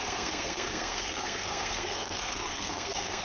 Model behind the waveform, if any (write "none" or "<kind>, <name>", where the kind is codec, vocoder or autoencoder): codec, SNAC